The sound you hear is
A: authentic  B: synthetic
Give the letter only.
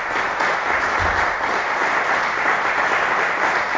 A